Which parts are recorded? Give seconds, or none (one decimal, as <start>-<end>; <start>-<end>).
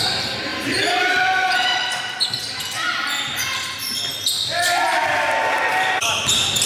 0.0-6.7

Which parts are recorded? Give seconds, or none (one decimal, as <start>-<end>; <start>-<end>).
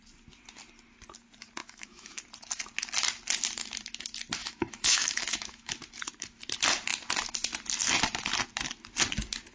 0.0-1.6; 2.2-4.4; 5.7-9.5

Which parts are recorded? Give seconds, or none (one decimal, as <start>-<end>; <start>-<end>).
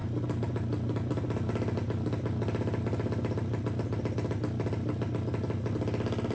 0.0-6.3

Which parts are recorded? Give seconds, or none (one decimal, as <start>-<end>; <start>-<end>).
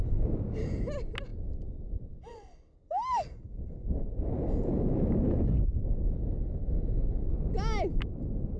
0.0-8.6